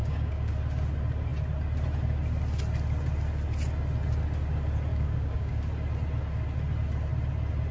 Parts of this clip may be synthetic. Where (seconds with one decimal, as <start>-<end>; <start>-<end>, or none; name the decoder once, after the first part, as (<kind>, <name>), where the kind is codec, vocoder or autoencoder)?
0.0-0.5 (codec, DAC); 4.9-5.6